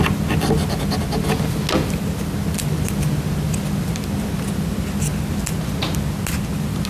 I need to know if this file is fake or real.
real